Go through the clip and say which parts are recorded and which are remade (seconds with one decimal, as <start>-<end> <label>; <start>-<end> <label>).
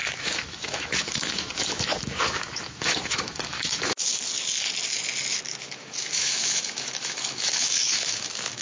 0.0-4.2 remade; 4.2-5.6 recorded; 5.6-8.6 remade